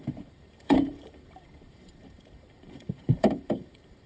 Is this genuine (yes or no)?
no